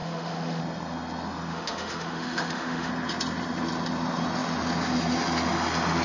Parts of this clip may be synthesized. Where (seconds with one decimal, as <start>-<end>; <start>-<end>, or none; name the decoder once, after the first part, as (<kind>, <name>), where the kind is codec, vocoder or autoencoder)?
0.0-0.6 (autoencoder, DAC-VAE); 1.5-2.9